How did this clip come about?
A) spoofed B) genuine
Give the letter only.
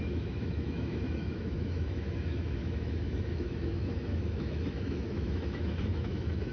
A